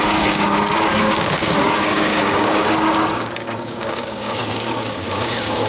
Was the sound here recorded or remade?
remade